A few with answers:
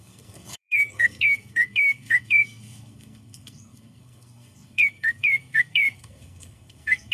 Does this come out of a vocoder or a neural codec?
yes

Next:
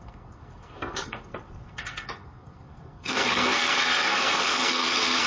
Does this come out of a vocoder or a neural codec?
yes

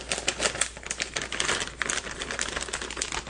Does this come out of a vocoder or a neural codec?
no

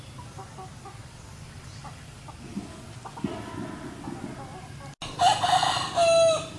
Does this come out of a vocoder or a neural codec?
no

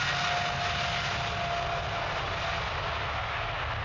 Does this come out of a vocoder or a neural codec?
no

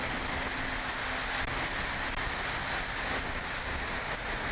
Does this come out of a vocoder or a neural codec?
no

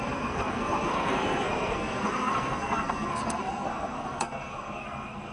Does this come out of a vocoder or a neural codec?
yes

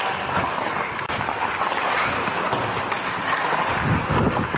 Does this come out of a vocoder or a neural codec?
no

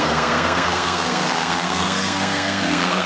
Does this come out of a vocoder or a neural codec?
yes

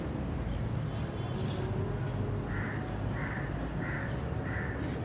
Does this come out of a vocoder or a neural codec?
no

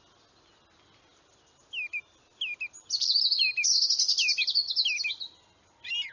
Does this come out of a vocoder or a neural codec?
no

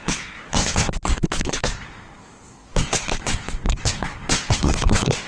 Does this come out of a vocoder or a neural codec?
yes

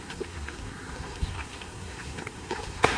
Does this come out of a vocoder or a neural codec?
yes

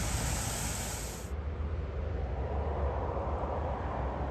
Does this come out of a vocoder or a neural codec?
no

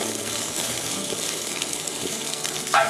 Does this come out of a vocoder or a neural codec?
yes